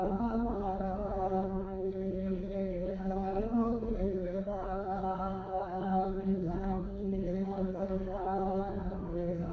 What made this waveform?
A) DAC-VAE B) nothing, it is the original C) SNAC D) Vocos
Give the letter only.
C